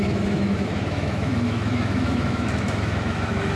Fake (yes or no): yes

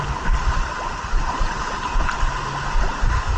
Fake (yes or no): no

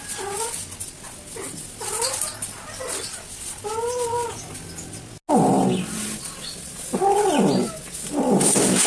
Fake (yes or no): no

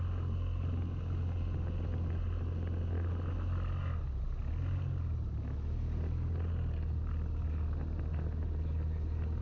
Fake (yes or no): no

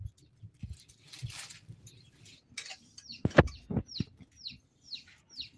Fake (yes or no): no